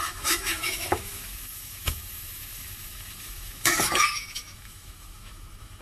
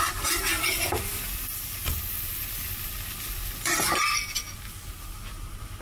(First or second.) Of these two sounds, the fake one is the first